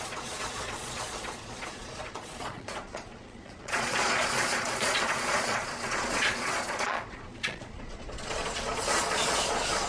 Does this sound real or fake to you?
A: fake